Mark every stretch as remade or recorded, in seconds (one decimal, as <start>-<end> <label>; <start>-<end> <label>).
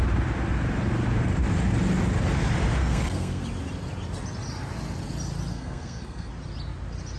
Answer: 0.0-2.8 recorded; 2.8-3.4 remade; 3.4-5.5 recorded; 5.5-6.3 remade; 6.3-7.2 recorded